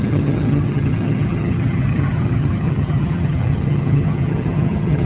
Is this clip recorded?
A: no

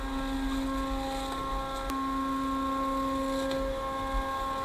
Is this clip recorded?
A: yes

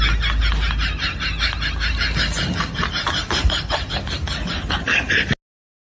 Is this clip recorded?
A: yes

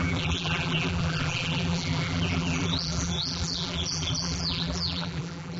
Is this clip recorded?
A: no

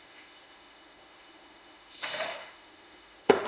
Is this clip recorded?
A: no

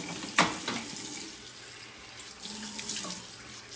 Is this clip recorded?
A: yes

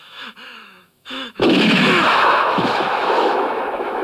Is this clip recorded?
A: no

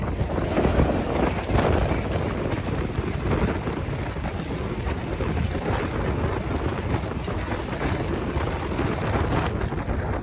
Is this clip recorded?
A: yes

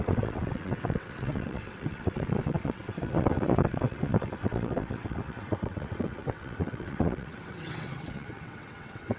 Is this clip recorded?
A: no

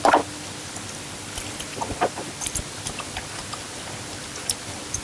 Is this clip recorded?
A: yes